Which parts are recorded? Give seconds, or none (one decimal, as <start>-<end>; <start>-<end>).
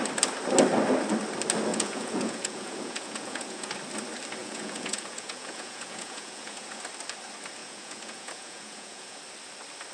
0.0-1.7; 3.7-4.4; 6.8-7.6; 9.2-9.9